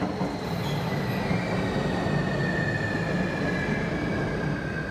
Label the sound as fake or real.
real